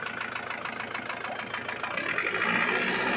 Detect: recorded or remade recorded